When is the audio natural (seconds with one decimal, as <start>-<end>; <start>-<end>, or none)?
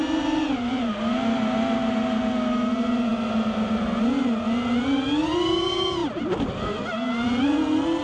0.0-8.0